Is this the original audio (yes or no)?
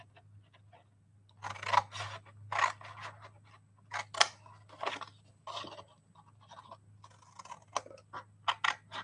yes